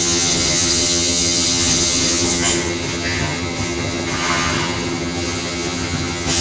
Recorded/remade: remade